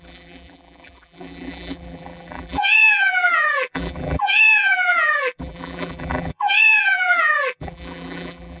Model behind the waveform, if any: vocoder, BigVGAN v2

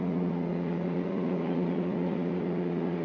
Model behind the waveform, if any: vocoder, Vocos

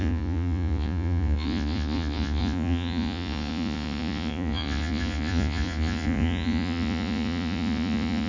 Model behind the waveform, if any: vocoder, Vocos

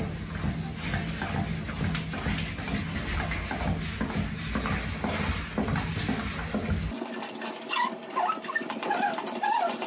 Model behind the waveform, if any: none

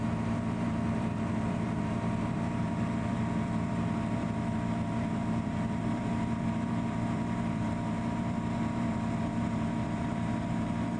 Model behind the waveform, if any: vocoder, BigVGAN v2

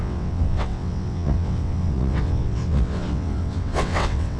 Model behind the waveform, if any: vocoder, WaveNeXt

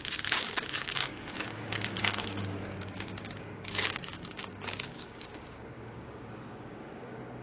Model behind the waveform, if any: codec, DAC